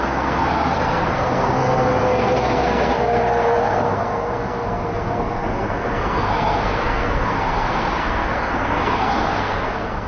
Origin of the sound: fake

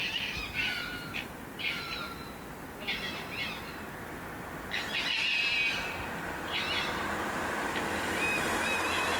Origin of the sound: real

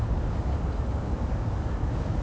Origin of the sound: fake